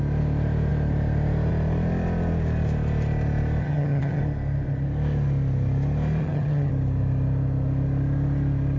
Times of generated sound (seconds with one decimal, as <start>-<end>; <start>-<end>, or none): 3.6-4.2; 6.2-6.7